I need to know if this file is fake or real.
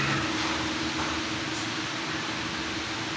real